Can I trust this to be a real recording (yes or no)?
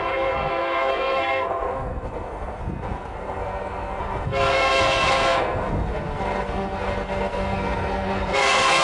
no